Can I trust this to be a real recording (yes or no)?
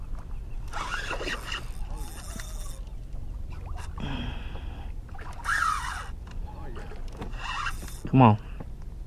yes